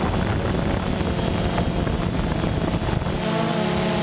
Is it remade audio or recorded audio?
recorded